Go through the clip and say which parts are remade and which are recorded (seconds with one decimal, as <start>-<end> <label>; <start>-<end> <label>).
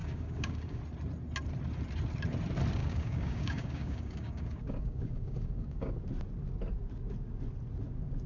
0.0-0.8 remade; 0.8-2.8 recorded; 2.8-5.9 remade; 5.9-8.3 recorded